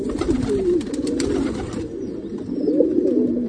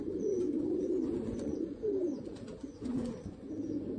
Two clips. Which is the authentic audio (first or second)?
first